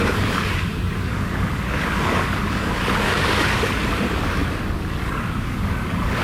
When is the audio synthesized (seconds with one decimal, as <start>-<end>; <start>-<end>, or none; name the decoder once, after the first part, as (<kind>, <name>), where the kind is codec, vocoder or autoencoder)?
0.0-6.2 (codec, DAC)